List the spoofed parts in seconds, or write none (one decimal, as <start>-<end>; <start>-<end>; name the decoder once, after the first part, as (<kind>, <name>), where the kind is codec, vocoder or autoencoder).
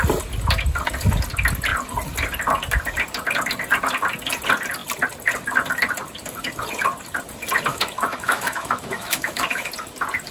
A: 7.7-9.7 (autoencoder, DAC-VAE)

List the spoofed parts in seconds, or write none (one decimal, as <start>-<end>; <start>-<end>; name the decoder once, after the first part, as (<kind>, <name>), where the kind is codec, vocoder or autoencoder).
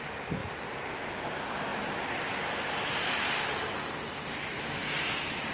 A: none